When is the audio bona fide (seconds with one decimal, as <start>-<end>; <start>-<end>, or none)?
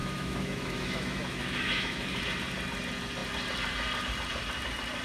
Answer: 2.2-5.0